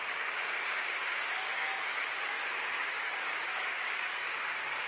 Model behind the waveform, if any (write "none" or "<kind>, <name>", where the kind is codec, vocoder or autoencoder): codec, DAC